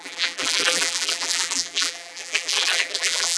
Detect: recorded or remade remade